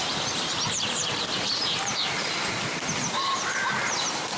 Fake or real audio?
fake